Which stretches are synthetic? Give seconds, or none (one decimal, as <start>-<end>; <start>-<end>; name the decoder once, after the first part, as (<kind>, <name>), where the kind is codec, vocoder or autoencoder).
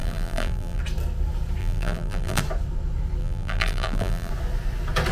0.0-0.8 (vocoder, BigVGAN v2); 1.6-2.4; 3.2-4.3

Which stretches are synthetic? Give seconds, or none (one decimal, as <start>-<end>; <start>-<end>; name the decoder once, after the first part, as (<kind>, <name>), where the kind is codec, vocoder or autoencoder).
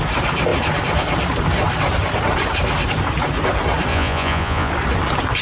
3.9-4.7 (vocoder, Vocos)